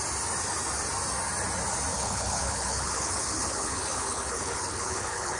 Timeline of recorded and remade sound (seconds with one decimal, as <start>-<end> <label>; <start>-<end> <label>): 0.0-1.9 recorded; 1.9-5.4 remade